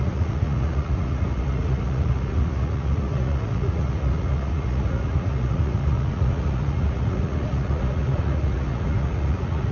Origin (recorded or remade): remade